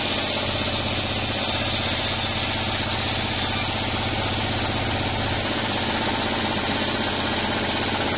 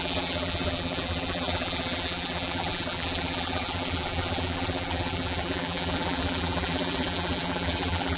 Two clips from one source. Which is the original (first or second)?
first